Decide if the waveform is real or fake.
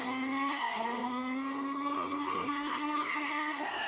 fake